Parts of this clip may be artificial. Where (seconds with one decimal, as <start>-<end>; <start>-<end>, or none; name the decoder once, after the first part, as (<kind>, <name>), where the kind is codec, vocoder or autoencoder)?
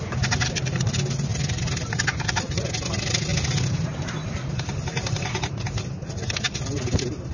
none